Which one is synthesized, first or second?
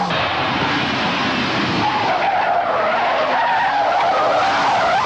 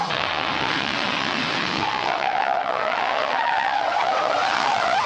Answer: second